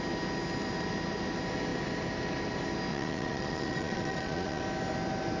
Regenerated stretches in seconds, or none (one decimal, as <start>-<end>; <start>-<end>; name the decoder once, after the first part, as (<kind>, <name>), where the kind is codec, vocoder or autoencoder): 2.9-4.6 (vocoder, Vocos)